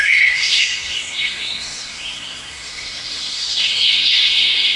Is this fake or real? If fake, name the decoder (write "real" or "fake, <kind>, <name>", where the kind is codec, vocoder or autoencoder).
fake, codec, SNAC